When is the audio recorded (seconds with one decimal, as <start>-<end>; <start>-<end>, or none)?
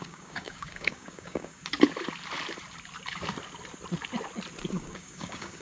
1.6-4.7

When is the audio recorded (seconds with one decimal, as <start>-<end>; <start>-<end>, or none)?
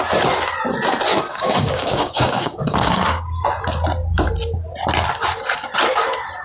0.0-1.3; 3.2-6.4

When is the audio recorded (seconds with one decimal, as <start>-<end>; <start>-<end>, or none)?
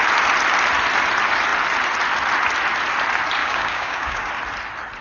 0.0-3.4; 4.3-5.0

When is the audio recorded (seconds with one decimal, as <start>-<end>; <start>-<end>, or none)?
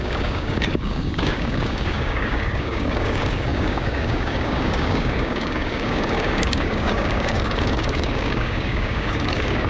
none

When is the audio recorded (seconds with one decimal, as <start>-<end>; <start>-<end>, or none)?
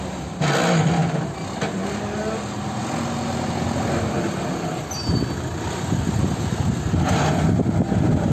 0.0-8.3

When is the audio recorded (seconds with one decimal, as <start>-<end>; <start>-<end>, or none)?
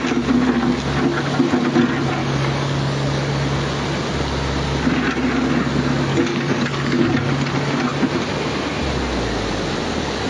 0.0-2.2; 3.3-6.1; 7.3-10.3